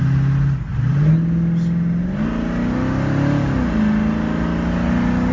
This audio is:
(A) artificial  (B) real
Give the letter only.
B